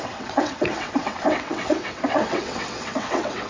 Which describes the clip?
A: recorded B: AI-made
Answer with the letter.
B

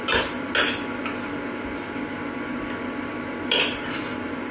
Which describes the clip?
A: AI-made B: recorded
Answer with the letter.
B